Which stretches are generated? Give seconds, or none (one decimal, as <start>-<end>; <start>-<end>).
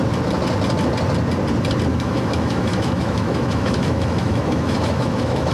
1.9-5.5